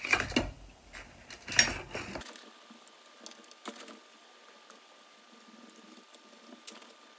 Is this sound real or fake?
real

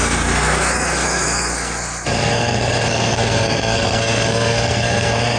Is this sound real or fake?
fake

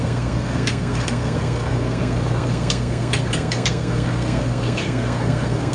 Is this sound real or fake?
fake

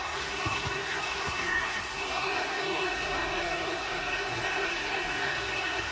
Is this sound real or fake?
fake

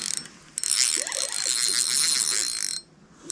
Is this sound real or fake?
real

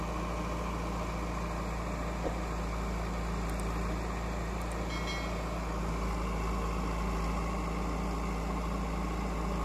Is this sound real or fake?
real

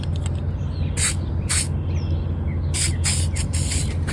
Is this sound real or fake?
real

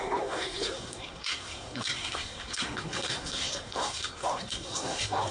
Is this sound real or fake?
fake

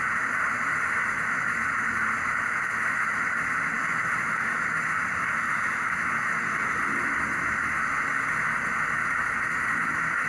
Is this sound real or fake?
real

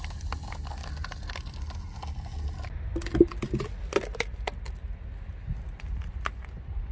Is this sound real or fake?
real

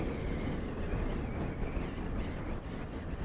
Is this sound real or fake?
real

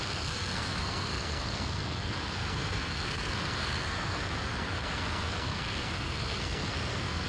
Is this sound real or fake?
fake